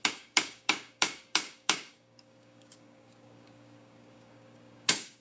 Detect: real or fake fake